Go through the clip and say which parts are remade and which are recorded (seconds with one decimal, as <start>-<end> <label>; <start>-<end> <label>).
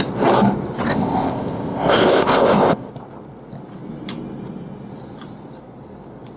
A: 0.0-0.9 recorded; 0.9-2.9 remade; 2.9-6.4 recorded